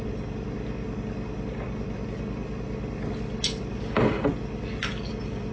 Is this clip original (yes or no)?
yes